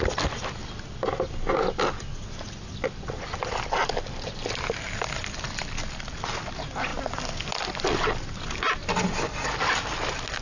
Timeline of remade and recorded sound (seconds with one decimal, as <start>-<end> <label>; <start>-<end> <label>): 0.0-10.4 recorded